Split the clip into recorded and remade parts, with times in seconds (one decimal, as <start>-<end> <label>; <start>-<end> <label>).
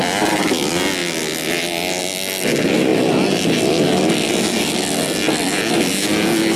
0.0-6.6 recorded